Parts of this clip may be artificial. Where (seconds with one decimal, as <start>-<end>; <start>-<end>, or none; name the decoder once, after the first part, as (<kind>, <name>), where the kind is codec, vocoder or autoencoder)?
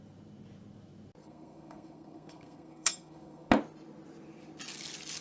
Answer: 1.2-3.5 (codec, SNAC)